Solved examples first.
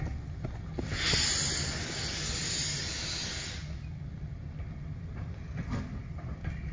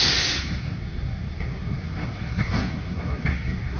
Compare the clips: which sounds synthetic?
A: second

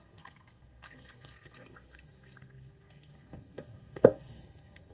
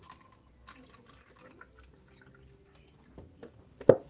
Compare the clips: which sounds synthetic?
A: first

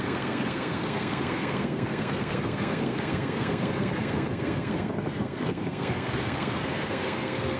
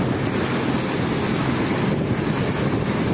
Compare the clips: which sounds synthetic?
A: first